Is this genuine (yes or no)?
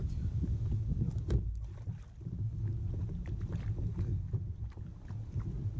yes